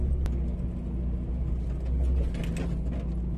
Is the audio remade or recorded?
recorded